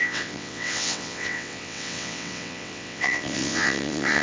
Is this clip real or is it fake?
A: fake